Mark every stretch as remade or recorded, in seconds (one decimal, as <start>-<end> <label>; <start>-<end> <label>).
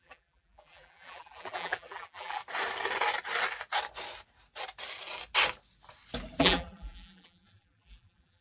0.0-2.4 remade; 2.4-6.4 recorded; 6.4-8.4 remade